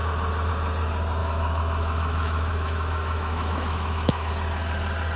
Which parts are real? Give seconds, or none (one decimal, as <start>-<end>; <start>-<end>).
0.0-1.2; 4.3-5.2